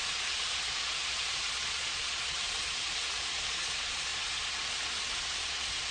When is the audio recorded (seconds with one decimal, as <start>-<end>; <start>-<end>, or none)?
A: none